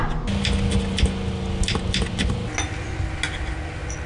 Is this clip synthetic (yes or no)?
no